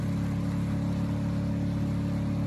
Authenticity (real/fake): real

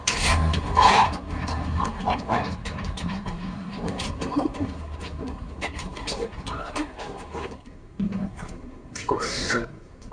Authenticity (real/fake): fake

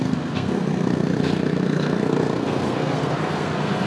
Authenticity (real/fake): fake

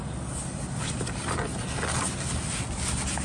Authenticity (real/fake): real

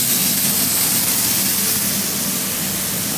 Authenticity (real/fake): real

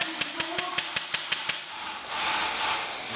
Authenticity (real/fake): real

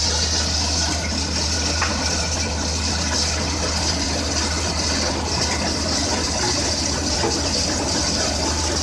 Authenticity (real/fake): real